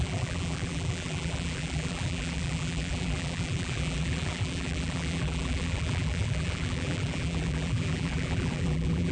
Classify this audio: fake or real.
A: fake